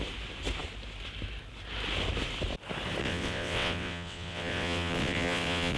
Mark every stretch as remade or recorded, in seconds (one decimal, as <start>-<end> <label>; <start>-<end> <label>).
0.0-3.0 recorded; 3.0-5.8 remade